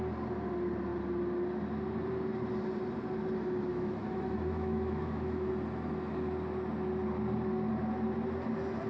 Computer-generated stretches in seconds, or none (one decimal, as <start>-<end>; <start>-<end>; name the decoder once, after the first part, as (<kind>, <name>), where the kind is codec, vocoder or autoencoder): 3.7-5.5 (autoencoder, DAC-VAE)